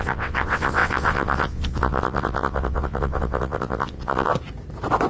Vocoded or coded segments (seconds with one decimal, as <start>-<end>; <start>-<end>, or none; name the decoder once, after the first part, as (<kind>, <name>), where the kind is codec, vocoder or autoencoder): 0.0-4.3 (vocoder, WaveNeXt)